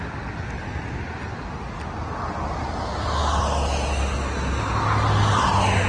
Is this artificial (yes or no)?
no